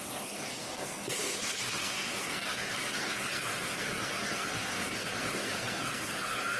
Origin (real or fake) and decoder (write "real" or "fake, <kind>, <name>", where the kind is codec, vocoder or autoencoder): fake, codec, SNAC